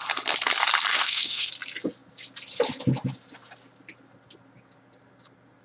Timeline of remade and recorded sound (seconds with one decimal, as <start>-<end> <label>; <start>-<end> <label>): 0.0-0.9 recorded; 0.9-1.5 remade; 1.5-5.6 recorded